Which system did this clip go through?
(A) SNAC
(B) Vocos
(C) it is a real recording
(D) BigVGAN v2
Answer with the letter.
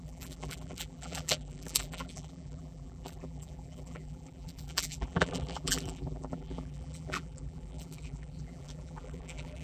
D